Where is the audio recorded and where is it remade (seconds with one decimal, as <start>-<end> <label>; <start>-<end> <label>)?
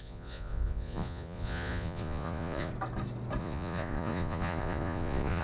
0.0-2.7 remade; 2.7-3.4 recorded; 3.4-5.4 remade